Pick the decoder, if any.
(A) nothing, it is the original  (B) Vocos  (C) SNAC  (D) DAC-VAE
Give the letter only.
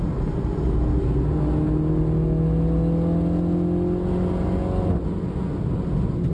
A